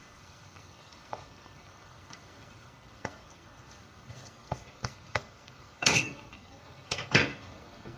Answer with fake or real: fake